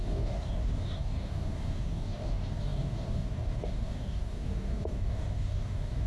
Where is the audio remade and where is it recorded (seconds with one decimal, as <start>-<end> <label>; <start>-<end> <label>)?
0.0-6.1 remade